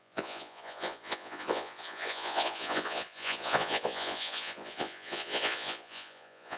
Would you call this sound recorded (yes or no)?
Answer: no